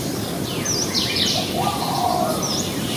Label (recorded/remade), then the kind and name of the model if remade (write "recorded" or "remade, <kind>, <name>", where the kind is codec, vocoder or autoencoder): recorded